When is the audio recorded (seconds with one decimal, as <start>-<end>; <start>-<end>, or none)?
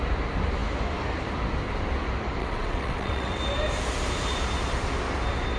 0.0-2.4; 3.4-5.6